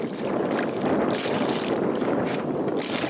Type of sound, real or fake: real